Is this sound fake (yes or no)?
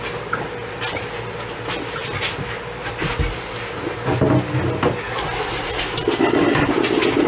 no